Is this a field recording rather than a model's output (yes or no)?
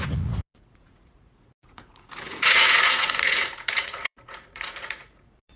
no